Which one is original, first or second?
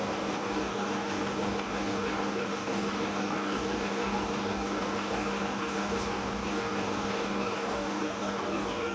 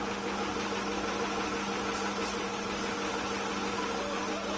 second